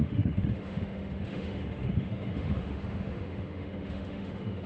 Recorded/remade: remade